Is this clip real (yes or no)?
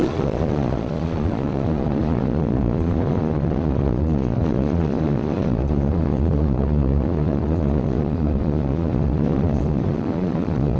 no